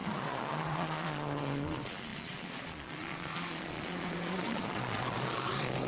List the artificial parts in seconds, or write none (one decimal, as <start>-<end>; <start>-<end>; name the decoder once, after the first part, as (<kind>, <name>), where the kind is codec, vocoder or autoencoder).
0.0-5.9 (vocoder, Vocos)